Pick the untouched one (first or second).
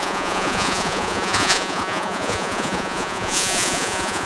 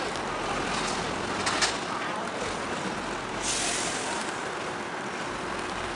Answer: second